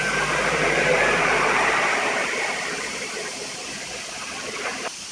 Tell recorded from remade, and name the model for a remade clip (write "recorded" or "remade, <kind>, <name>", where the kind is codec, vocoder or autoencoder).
remade, vocoder, BigVGAN v2